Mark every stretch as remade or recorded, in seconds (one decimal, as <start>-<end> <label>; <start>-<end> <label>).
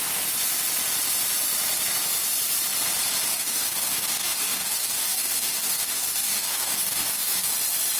0.0-3.3 recorded; 3.3-7.5 remade; 7.5-8.0 recorded